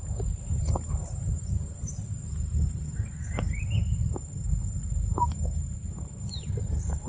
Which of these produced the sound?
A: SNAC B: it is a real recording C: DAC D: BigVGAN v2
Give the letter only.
D